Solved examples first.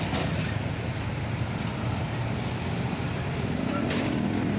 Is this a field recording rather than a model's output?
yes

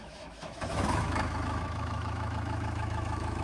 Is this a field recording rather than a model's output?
no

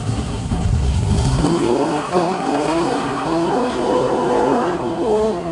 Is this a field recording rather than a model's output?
no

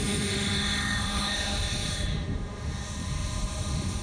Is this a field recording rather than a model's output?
no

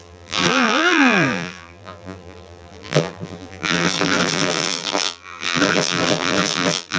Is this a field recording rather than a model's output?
no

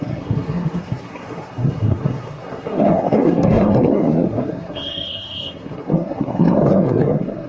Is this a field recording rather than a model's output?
no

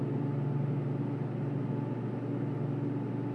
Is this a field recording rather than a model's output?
yes